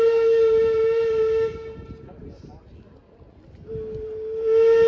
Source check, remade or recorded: recorded